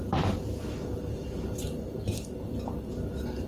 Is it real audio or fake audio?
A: fake